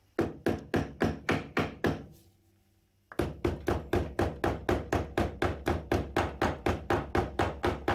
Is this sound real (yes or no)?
yes